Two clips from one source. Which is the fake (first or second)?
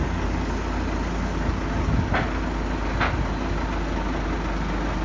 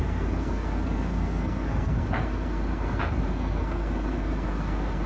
second